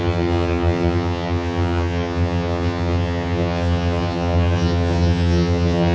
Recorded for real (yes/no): no